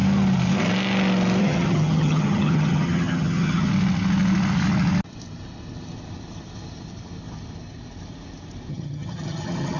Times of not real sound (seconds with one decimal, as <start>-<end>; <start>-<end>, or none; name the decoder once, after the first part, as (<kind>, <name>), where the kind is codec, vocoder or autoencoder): 1.4-3.7 (vocoder, HiFi-GAN); 8.7-9.8